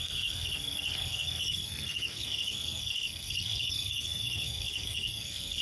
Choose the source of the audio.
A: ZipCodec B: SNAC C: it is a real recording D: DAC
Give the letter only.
B